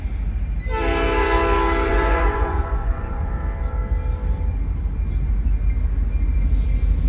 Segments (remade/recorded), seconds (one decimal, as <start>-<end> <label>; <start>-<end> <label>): 0.0-1.9 recorded; 1.9-3.3 remade; 3.3-7.1 recorded